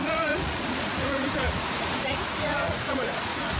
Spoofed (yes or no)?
yes